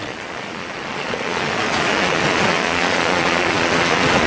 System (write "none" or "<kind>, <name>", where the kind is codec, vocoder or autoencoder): vocoder, Vocos